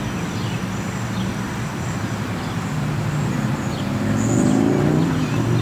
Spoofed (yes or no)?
no